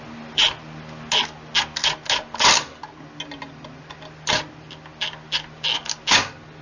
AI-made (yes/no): no